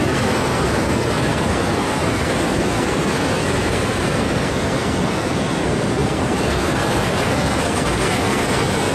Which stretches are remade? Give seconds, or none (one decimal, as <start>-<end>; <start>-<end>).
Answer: 0.0-8.9